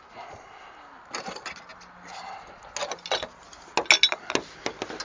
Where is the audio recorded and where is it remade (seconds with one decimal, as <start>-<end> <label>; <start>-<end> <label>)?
0.0-5.0 recorded